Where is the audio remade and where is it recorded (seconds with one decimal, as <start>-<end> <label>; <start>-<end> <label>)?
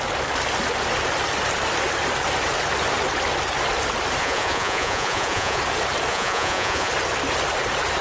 0.0-4.2 recorded; 4.2-5.6 remade; 5.6-6.1 recorded; 6.1-6.9 remade; 6.9-8.0 recorded